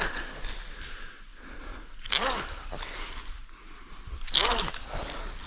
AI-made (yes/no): no